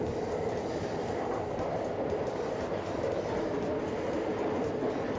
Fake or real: real